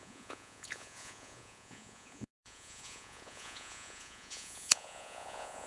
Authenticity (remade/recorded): remade